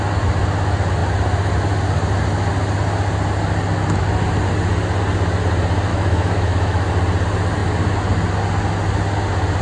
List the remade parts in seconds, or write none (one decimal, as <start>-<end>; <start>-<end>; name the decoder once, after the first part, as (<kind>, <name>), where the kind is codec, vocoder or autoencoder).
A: 5.9-6.9 (autoencoder, DAC-VAE)